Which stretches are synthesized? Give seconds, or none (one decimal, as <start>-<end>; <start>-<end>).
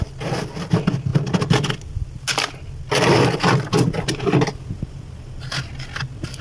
none